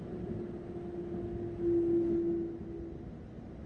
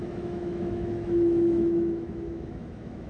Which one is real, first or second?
first